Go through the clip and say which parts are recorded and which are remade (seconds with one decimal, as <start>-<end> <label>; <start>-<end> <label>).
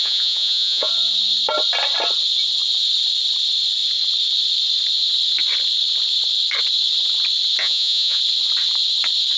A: 0.0-0.9 remade; 0.9-7.6 recorded; 7.6-8.2 remade; 8.2-9.4 recorded